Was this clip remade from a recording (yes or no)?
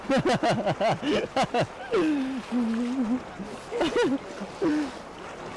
no